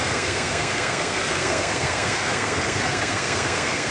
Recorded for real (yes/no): no